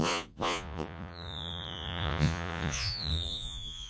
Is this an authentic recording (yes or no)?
no